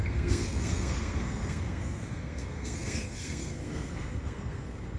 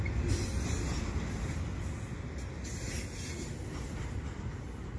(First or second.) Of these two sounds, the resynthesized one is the first